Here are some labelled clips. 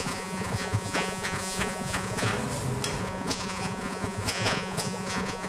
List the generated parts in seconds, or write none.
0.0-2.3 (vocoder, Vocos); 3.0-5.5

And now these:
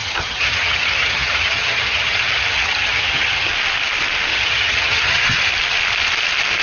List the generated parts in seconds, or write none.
0.0-3.5 (vocoder, HiFi-GAN); 4.3-5.5